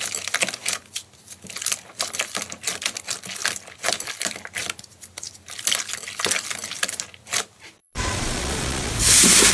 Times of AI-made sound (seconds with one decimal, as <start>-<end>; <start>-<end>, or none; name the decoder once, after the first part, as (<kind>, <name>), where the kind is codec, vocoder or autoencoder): 7.8-8.9 (vocoder, Vocos)